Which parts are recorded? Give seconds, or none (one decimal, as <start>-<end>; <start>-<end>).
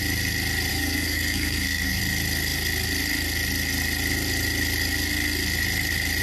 0.0-0.7; 2.0-6.2